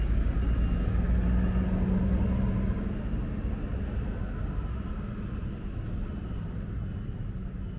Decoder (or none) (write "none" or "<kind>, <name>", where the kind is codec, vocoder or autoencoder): none